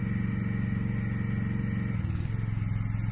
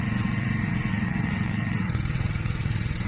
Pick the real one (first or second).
first